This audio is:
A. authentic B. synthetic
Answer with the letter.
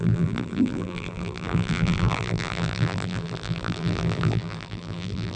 B